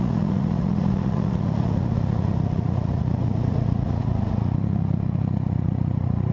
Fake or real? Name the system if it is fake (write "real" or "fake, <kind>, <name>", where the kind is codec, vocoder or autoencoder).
fake, vocoder, Vocos